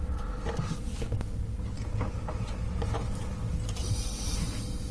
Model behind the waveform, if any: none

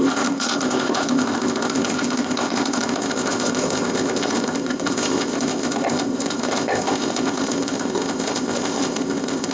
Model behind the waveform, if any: codec, ZipCodec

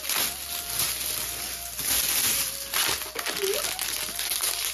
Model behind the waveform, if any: none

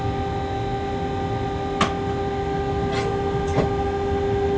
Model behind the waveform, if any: none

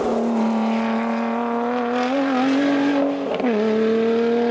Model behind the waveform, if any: none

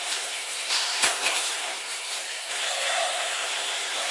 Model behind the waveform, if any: codec, SNAC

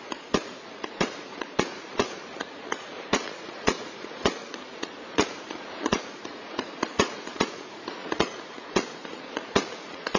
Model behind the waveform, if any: vocoder, Vocos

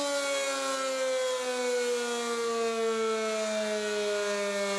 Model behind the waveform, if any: none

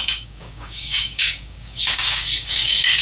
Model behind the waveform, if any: codec, DAC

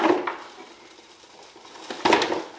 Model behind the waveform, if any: none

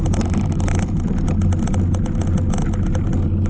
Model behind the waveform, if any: none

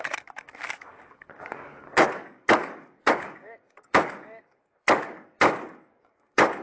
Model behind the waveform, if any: codec, DAC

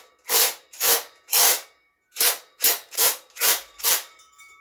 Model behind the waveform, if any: vocoder, BigVGAN v2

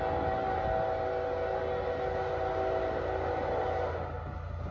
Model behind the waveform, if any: none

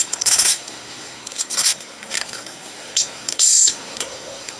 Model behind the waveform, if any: codec, SNAC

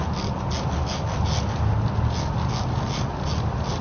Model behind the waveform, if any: none